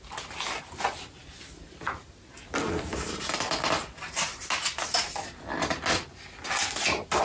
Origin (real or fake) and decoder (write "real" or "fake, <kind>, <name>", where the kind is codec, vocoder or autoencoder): real